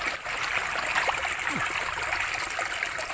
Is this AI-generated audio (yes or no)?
no